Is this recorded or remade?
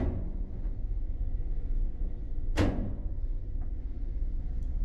remade